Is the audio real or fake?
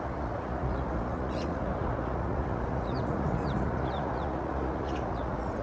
fake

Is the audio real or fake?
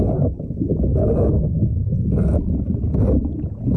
real